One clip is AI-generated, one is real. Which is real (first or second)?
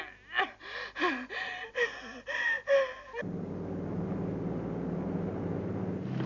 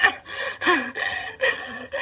first